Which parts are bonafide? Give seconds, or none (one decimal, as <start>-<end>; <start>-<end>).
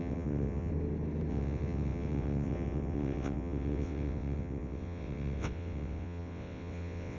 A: 0.7-1.3